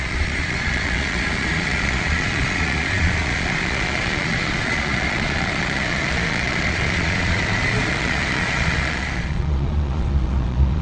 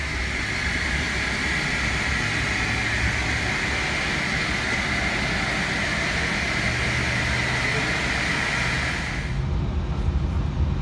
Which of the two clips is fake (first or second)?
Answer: first